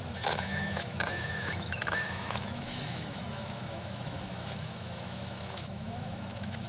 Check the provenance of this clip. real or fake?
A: fake